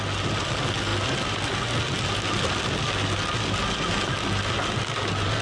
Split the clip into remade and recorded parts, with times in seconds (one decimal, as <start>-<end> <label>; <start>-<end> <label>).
0.0-5.4 recorded